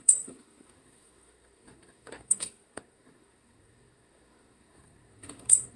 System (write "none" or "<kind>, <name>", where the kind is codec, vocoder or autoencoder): codec, SNAC